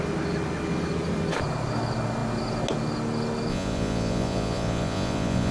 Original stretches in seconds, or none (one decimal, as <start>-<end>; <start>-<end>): 0.0-3.5